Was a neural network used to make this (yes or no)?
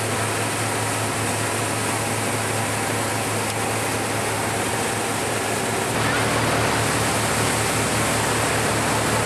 no